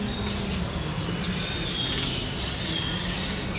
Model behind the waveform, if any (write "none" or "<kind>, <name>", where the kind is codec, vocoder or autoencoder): none